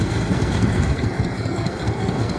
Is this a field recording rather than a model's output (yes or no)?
no